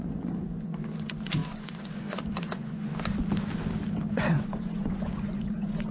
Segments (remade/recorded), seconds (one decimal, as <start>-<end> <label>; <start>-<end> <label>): 0.0-2.9 remade; 2.9-4.1 recorded; 4.1-5.9 remade